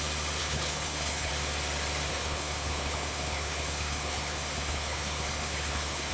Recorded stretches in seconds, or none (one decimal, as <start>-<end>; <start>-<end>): 0.0-0.4; 1.3-2.1